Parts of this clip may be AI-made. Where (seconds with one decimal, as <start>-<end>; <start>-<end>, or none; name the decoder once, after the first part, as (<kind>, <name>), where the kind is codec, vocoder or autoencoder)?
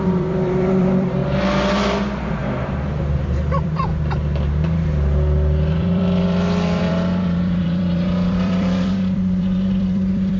0.0-1.2 (vocoder, BigVGAN v2); 2.2-3.9; 5.7-10.4